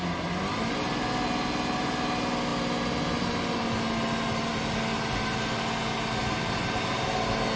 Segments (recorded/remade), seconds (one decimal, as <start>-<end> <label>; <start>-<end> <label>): 0.0-7.6 recorded